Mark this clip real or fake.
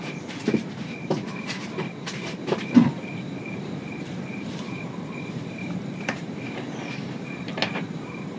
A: fake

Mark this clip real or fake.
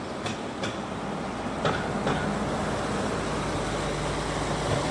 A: real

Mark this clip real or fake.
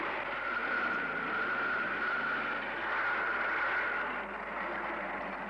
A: real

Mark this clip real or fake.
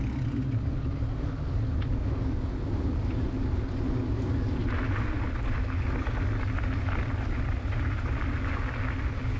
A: real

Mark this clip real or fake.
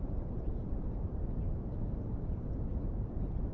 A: fake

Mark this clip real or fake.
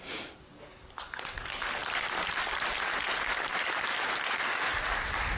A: real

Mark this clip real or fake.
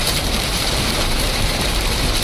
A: fake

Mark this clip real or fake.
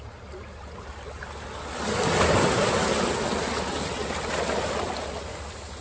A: real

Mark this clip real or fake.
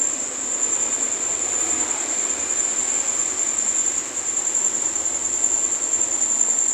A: real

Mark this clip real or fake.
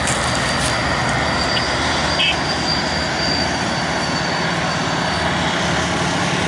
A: real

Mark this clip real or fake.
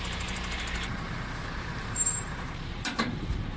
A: fake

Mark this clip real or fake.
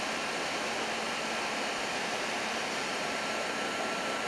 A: fake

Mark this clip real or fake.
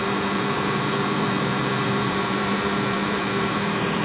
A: fake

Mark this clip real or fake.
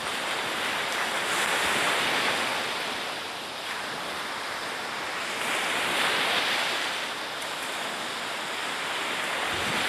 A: real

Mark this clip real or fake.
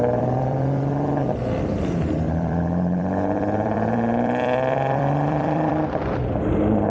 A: fake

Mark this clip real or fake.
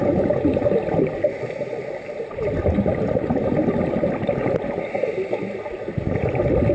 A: real